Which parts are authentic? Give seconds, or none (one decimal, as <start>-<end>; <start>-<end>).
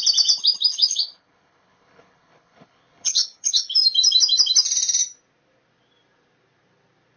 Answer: 0.0-0.7; 3.7-7.2